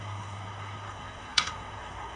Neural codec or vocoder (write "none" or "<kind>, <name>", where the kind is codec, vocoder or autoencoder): codec, SNAC